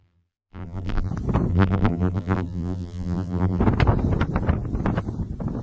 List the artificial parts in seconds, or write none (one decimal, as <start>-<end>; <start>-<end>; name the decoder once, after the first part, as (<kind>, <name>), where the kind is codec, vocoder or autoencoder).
0.0-1.1 (vocoder, BigVGAN v2); 1.5-3.6